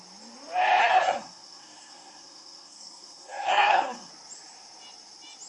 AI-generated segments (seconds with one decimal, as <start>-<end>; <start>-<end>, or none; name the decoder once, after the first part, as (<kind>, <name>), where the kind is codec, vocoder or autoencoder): 0.8-4.1 (codec, SNAC)